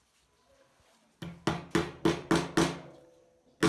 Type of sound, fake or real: real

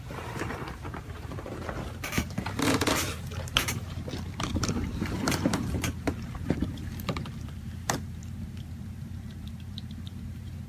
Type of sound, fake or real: fake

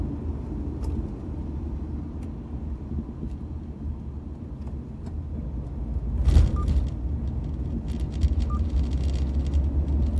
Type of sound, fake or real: real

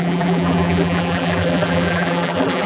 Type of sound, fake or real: fake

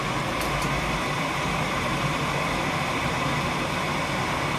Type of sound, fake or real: fake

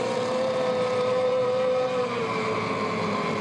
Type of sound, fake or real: fake